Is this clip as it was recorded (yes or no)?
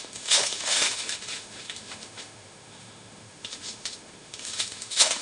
no